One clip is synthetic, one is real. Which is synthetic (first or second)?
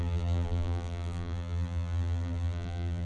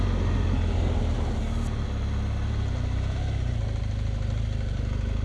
first